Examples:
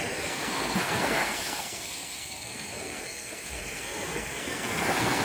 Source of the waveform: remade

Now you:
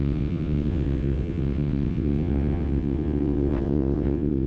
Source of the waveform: remade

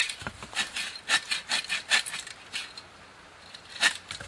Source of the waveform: recorded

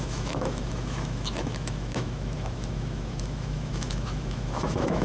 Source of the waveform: remade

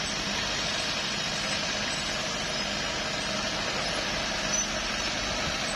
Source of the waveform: recorded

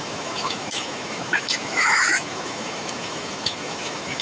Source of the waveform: remade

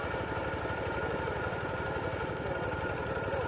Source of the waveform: recorded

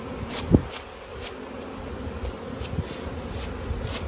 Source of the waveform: recorded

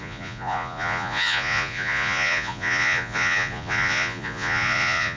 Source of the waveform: remade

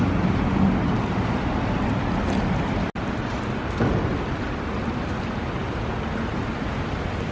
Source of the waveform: recorded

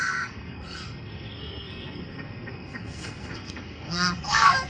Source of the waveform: remade